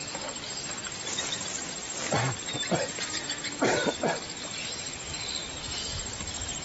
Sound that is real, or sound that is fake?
real